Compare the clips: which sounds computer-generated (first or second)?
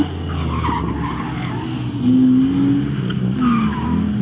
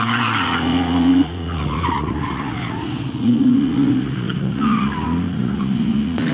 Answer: second